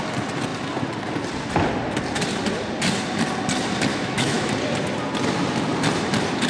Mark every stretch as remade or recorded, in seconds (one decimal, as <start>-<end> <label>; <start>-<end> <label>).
0.0-3.9 recorded; 3.9-4.5 remade; 4.5-6.5 recorded